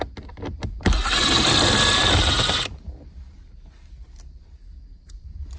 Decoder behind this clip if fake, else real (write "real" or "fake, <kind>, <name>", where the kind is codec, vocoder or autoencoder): real